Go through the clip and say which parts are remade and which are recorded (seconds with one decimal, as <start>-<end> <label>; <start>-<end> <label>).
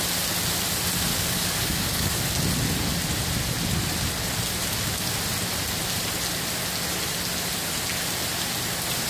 0.0-1.1 recorded; 1.1-2.1 remade; 2.1-9.1 recorded